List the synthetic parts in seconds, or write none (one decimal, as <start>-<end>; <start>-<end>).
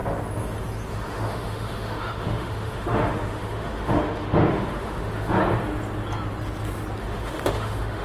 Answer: 0.9-5.4; 7.0-8.0